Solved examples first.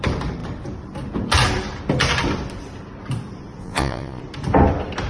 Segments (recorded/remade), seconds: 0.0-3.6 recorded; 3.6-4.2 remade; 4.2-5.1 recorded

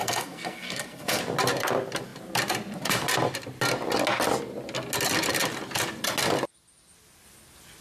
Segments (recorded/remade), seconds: 0.0-1.2 remade; 1.2-7.8 recorded

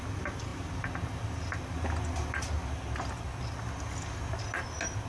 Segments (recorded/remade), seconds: 0.0-5.1 recorded

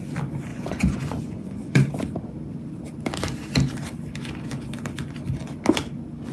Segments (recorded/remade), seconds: 0.0-0.5 recorded; 0.5-1.9 remade; 1.9-6.3 recorded